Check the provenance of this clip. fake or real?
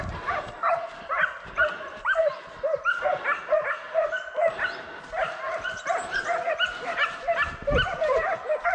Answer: real